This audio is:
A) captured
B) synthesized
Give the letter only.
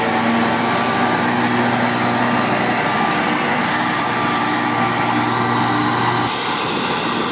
A